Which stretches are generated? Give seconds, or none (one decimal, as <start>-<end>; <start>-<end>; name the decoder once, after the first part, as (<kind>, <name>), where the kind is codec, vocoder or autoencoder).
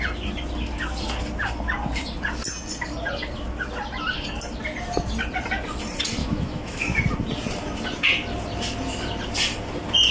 6.2-7.0 (autoencoder, DAC-VAE)